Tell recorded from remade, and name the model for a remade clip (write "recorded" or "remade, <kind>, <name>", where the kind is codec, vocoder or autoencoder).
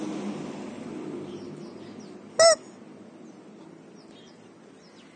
recorded